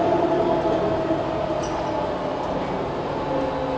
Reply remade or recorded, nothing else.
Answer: recorded